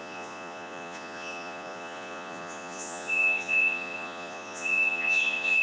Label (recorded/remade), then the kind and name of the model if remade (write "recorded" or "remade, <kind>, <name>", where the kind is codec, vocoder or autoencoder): remade, vocoder, Vocos